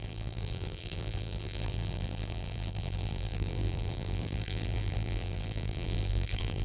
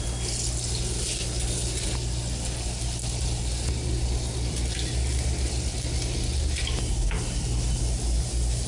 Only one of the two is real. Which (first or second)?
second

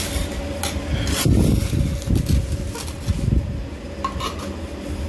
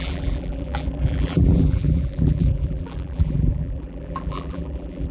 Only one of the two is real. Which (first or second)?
first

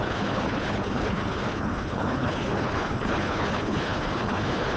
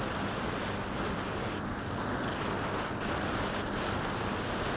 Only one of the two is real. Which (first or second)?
second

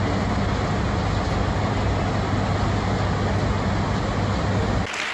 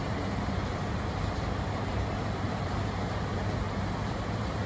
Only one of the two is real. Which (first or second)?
first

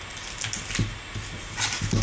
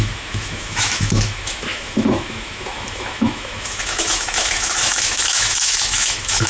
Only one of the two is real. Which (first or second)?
first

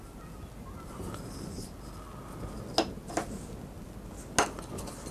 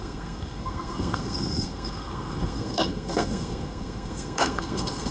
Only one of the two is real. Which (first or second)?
first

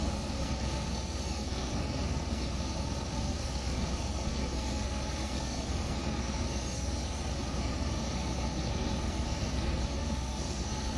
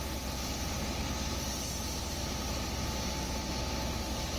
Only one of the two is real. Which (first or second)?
second